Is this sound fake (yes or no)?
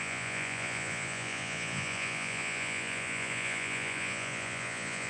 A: yes